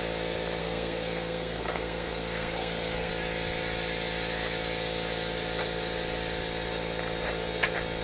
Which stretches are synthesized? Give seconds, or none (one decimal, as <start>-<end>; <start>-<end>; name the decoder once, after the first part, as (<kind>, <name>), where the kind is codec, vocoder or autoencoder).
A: 0.6-3.1 (codec, SNAC)